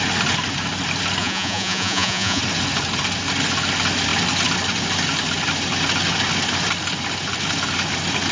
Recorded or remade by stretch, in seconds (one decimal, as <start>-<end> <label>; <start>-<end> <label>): 0.0-1.2 recorded; 1.2-2.4 remade; 2.4-8.3 recorded